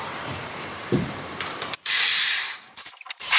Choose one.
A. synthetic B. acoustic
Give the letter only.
A